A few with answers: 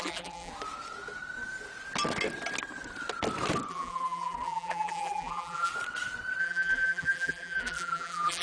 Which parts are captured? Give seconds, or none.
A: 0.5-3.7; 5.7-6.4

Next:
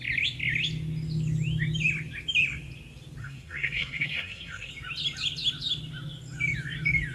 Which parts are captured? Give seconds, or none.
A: 0.0-3.2; 4.7-7.1

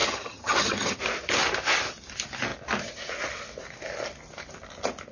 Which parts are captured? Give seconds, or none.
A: 1.0-5.1